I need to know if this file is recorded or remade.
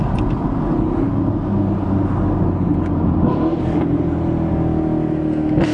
recorded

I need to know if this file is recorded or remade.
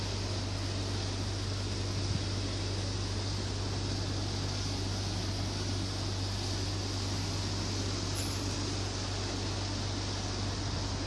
recorded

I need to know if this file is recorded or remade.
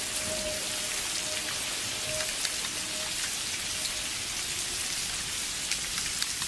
recorded